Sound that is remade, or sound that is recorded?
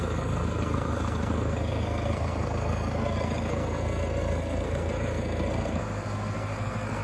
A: remade